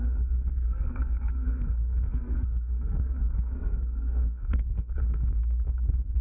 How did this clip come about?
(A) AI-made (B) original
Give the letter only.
A